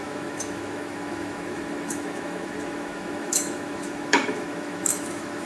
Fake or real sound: fake